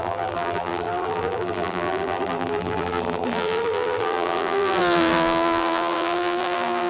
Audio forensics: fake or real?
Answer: fake